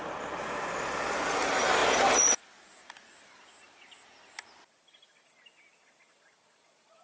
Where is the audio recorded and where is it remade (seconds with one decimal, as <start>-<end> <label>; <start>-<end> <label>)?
0.0-7.0 recorded

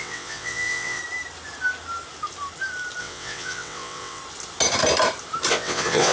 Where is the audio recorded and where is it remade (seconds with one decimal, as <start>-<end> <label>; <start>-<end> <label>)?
0.0-1.0 remade; 1.0-3.0 recorded; 3.0-4.2 remade; 4.2-5.5 recorded; 5.5-6.1 remade

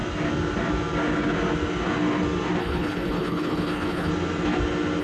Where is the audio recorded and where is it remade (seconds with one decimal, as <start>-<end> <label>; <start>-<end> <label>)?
0.0-2.6 recorded; 2.6-4.1 remade; 4.1-5.0 recorded

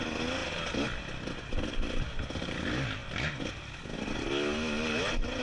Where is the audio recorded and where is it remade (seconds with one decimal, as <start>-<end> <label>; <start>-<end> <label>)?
0.0-5.4 recorded